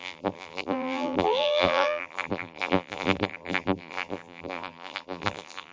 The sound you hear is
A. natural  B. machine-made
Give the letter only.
B